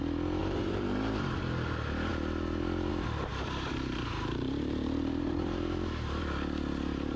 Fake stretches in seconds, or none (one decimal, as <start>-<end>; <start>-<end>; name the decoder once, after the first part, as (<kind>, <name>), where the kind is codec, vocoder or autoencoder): 0.4-1.4 (vocoder, BigVGAN v2); 3.3-6.2